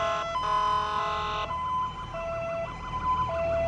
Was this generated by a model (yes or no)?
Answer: no